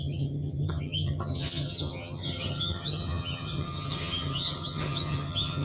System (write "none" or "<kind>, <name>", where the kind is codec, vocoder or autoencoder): vocoder, HiFi-GAN